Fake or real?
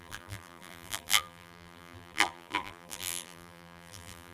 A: fake